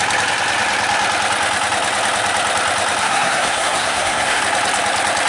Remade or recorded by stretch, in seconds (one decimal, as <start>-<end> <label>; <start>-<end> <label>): 0.0-3.0 recorded; 3.0-4.4 remade; 4.4-5.3 recorded